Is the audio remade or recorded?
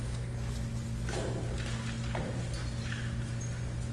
recorded